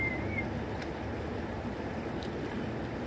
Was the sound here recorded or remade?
recorded